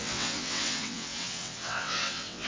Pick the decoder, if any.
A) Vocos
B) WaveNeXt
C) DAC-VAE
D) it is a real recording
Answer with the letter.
B